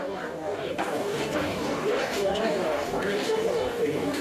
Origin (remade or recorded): remade